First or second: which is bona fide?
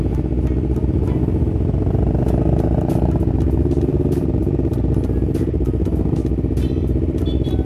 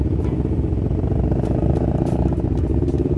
first